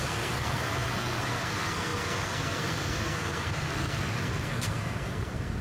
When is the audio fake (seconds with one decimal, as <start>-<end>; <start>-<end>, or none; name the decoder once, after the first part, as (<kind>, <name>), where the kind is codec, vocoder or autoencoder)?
0.0-5.6 (codec, SNAC)